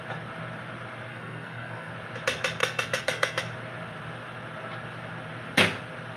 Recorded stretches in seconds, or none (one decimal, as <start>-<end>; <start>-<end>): 0.0-1.1; 1.9-2.6; 3.4-6.2